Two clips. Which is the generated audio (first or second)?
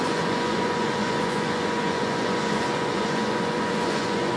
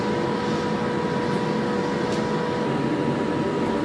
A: first